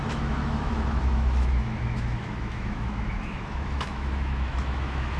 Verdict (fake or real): fake